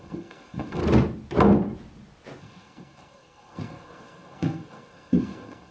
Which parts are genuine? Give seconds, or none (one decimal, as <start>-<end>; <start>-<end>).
0.8-2.4